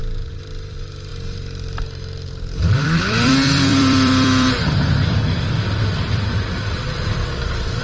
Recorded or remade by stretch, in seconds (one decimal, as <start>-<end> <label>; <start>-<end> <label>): 0.0-0.5 recorded; 0.5-1.1 remade; 1.1-2.6 recorded; 2.6-7.8 remade